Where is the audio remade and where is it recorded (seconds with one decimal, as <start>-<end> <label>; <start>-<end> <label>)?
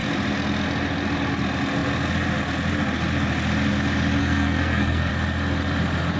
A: 0.0-4.2 recorded; 4.2-5.1 remade; 5.1-6.2 recorded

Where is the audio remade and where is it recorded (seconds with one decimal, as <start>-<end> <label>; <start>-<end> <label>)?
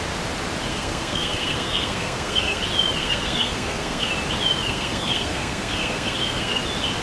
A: 0.0-0.7 recorded; 0.7-2.6 remade; 2.6-3.0 recorded; 3.0-4.1 remade; 4.1-4.6 recorded; 4.6-6.6 remade; 6.6-7.0 recorded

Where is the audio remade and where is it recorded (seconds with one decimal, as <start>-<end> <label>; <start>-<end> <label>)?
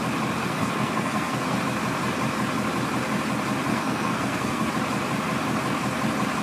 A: 0.0-0.4 recorded; 0.4-1.6 remade; 1.6-3.7 recorded; 3.7-4.7 remade; 4.7-6.4 recorded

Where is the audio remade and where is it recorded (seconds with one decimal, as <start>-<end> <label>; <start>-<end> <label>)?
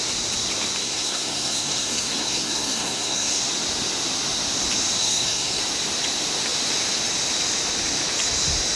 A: 0.0-0.8 recorded; 0.8-3.4 remade; 3.4-5.0 recorded; 5.0-5.6 remade; 5.6-8.8 recorded